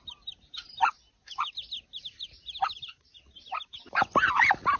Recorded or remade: recorded